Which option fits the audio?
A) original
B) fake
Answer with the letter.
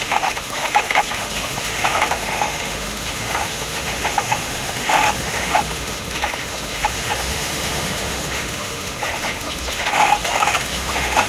B